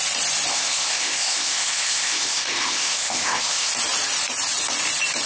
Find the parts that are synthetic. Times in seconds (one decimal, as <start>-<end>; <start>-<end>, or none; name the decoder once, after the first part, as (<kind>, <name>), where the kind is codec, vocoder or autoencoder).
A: 0.5-3.7 (codec, ZipCodec)